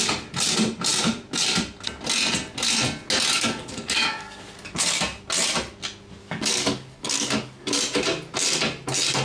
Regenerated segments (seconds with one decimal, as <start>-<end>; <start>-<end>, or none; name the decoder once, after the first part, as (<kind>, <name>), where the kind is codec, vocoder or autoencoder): 3.3-5.0 (codec, DAC); 6.2-7.8